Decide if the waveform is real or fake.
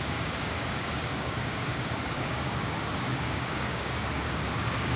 fake